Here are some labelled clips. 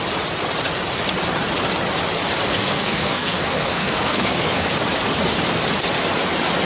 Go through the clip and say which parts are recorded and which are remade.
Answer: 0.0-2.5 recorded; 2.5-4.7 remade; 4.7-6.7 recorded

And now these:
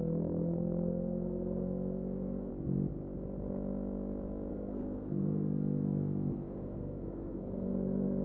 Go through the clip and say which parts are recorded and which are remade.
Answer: 0.0-2.5 remade; 2.5-4.5 recorded; 4.5-8.2 remade

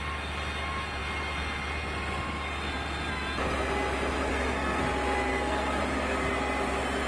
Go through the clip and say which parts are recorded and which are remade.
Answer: 0.0-4.3 recorded; 4.3-4.8 remade; 4.8-5.3 recorded; 5.3-5.8 remade; 5.8-7.1 recorded

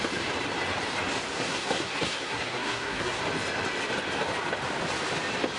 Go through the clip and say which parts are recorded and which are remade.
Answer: 0.0-1.3 recorded; 1.3-3.2 remade; 3.2-5.6 recorded

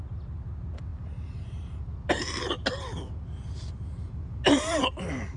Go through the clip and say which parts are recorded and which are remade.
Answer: 0.0-5.4 recorded